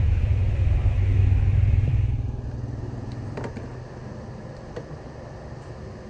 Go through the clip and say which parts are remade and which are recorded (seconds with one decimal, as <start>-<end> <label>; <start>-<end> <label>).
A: 0.0-6.1 recorded